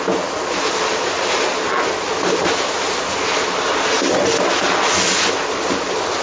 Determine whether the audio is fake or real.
real